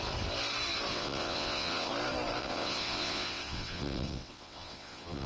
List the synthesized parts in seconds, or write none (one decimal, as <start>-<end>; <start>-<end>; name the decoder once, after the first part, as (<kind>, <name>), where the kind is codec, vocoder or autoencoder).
0.9-1.9 (vocoder, WaveNeXt); 2.4-5.3